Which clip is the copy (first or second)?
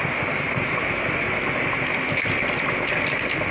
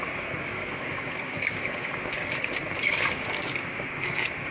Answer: second